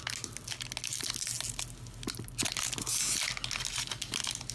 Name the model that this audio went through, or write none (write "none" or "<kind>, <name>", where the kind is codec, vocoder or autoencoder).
none